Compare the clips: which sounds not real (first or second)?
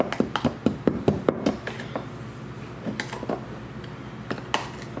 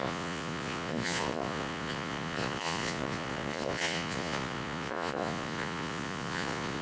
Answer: second